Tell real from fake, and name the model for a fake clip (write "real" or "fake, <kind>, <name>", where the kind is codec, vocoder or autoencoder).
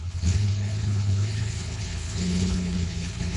fake, codec, HILCodec